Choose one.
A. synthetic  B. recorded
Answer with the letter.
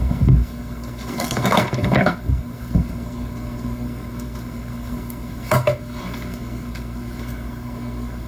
A